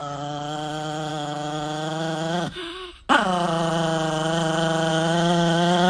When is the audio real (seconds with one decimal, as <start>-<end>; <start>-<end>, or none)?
0.0-1.1; 2.6-4.9